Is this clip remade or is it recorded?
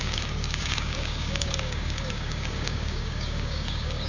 remade